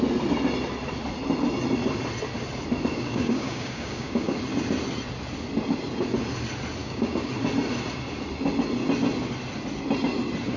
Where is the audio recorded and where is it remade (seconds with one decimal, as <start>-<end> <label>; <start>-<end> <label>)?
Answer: 0.0-2.9 recorded; 2.9-4.4 remade; 4.4-6.8 recorded; 6.8-7.3 remade; 7.3-10.6 recorded